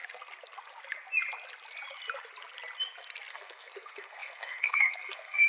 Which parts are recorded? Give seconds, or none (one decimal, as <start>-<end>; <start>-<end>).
0.0-3.3